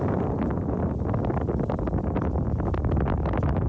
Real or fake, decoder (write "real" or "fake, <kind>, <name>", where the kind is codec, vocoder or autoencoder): real